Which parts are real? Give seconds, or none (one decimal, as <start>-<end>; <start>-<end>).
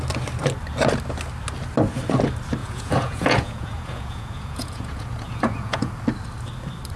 0.0-2.6; 5.9-7.0